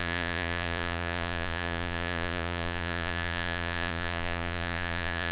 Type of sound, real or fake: fake